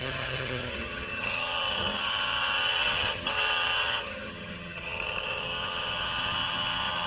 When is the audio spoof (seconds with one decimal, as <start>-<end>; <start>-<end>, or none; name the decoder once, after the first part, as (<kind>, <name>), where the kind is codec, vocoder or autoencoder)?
0.0-7.1 (vocoder, HiFi-GAN)